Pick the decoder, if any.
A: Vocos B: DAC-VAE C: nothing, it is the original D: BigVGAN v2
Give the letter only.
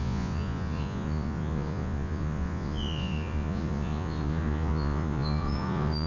A